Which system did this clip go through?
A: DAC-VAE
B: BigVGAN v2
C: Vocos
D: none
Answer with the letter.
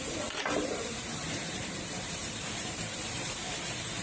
B